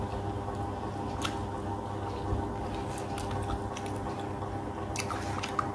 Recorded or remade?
recorded